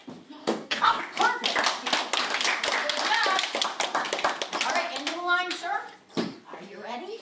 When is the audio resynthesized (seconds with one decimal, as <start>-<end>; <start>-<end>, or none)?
0.4-1.0